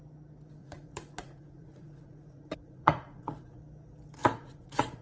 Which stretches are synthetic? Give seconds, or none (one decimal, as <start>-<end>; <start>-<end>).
0.6-3.6; 4.2-5.0